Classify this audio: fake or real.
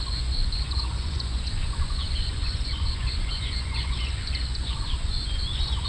fake